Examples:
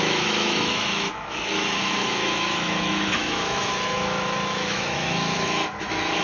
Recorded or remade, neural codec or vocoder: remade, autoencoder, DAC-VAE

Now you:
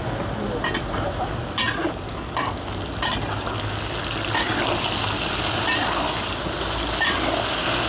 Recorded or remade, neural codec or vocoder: recorded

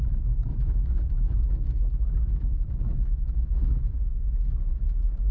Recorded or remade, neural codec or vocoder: remade, autoencoder, DAC-VAE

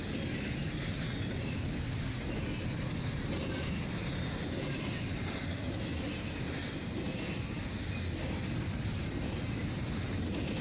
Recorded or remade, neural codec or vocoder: recorded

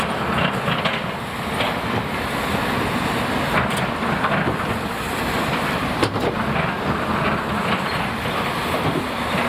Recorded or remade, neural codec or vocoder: recorded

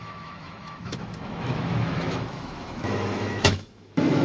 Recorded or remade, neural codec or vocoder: remade, autoencoder, DAC-VAE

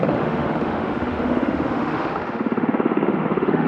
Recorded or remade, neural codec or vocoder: remade, autoencoder, DAC-VAE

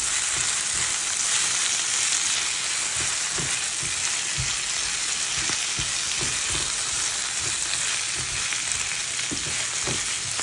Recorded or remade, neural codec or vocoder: recorded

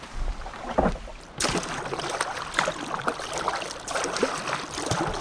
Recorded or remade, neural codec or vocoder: recorded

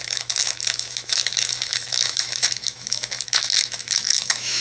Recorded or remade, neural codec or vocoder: remade, autoencoder, DAC-VAE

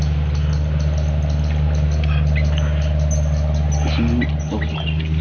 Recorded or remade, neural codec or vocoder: recorded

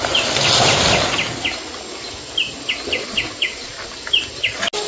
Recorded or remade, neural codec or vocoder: recorded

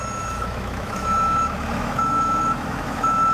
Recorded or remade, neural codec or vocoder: remade, autoencoder, DAC-VAE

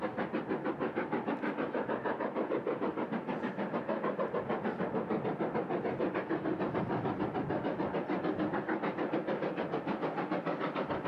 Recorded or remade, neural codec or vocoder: recorded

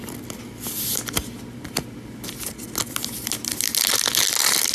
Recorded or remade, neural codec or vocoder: recorded